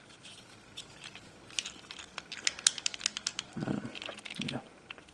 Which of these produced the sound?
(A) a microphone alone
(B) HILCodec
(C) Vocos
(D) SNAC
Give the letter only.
A